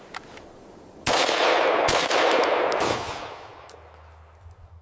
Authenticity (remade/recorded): recorded